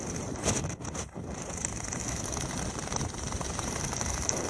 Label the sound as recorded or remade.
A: remade